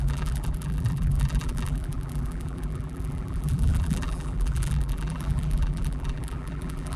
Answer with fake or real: fake